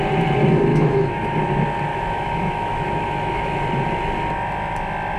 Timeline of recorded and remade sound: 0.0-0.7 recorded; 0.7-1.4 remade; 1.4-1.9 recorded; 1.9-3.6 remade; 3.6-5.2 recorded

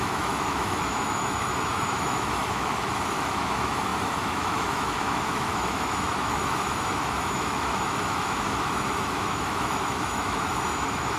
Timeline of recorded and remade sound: 0.0-11.2 remade